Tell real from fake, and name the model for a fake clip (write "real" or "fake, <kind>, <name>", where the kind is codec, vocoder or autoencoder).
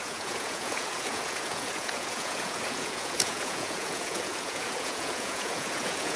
fake, vocoder, Vocos